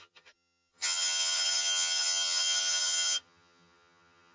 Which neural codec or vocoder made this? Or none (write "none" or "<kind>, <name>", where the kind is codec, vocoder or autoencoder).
vocoder, HiFi-GAN